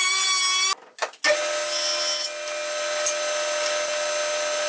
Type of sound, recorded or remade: recorded